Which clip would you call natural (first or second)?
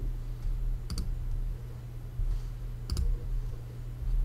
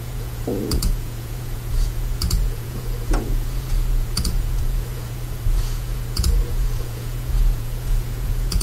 first